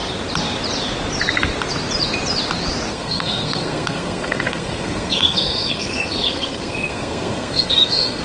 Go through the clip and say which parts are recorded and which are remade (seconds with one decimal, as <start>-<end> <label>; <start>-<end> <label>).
0.0-2.9 recorded; 2.9-8.2 remade